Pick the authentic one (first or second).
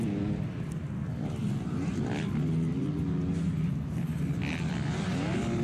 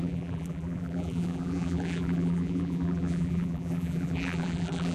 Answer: first